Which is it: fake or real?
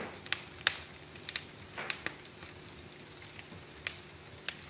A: real